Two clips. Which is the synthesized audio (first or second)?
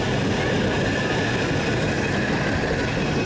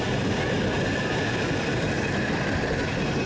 second